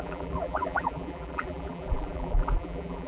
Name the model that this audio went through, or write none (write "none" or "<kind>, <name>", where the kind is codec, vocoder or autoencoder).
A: vocoder, BigVGAN v2